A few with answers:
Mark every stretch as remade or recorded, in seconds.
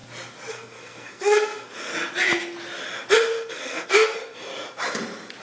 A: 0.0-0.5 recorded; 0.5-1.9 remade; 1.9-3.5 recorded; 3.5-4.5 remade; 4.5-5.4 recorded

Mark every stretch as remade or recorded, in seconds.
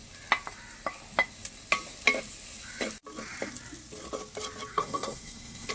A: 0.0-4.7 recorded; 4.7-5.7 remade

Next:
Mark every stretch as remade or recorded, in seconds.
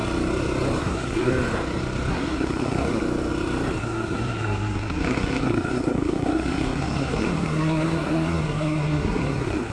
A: 0.0-0.8 recorded; 0.8-1.3 remade; 1.3-2.1 recorded; 2.1-3.0 remade; 3.0-3.8 recorded; 3.8-9.7 remade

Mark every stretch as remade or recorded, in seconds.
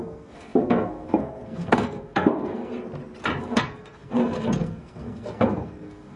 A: 0.0-2.7 remade; 2.7-3.4 recorded; 3.4-6.2 remade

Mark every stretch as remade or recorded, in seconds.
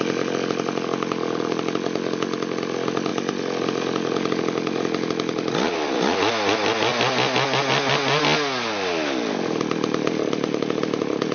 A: 0.0-11.3 recorded